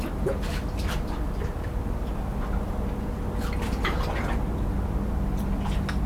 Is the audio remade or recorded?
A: recorded